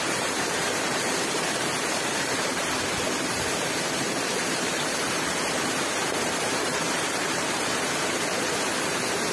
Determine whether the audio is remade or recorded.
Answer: remade